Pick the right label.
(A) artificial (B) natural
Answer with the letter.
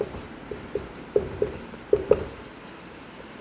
B